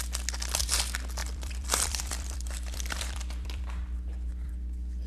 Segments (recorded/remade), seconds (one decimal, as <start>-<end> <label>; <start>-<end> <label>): 0.0-1.2 recorded; 1.2-4.3 remade; 4.3-5.1 recorded